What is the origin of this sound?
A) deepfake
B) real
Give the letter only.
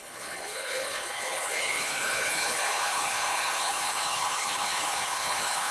A